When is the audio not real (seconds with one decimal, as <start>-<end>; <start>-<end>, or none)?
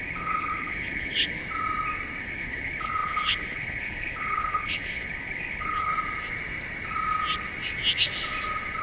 0.0-1.4; 2.2-5.9